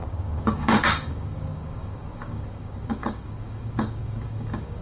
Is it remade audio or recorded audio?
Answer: remade